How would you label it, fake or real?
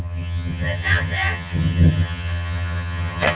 fake